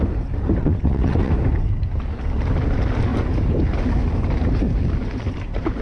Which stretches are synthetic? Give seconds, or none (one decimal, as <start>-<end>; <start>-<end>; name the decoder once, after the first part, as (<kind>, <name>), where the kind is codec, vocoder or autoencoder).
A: 0.6-1.3 (vocoder, WaveNeXt)